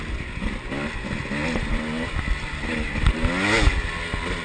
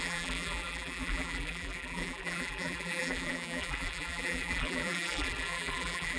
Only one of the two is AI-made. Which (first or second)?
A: second